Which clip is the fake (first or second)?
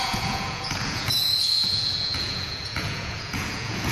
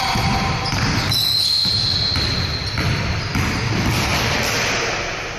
first